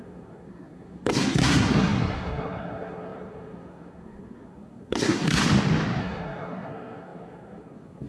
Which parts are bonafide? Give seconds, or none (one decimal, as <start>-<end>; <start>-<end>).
5.4-6.0